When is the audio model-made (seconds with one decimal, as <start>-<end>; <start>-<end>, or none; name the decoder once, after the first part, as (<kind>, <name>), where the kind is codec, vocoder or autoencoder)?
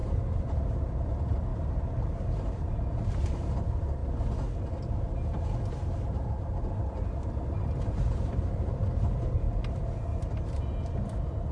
0.0-1.5 (vocoder, BigVGAN v2); 2.3-4.0; 6.8-10.1; 10.8-11.5